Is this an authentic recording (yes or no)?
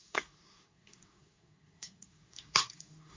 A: no